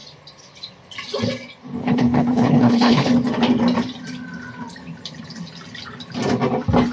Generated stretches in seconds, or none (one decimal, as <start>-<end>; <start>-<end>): 1.8-3.1

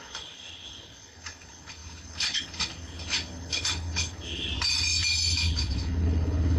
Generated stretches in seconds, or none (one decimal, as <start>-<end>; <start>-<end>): 0.0-4.5; 5.4-6.6

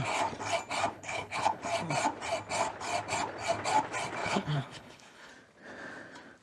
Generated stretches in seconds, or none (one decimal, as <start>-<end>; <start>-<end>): 0.9-1.6; 4.2-5.3

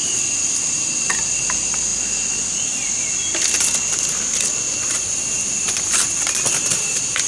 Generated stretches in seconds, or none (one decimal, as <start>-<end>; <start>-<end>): none

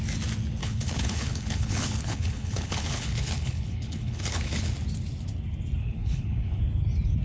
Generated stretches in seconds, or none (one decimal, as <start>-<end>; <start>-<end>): 0.6-4.7; 5.8-6.6

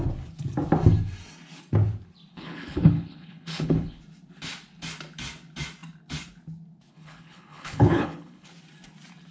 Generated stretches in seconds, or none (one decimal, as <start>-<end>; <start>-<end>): 2.3-4.0; 6.9-8.5

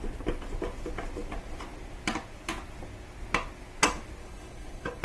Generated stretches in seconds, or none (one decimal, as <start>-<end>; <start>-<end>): 4.2-5.0